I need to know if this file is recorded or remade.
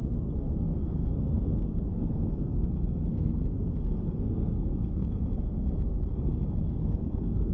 remade